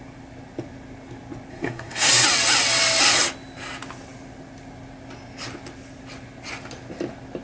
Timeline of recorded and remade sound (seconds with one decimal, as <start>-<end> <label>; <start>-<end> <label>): 0.0-1.5 recorded; 1.5-2.1 remade; 2.1-7.4 recorded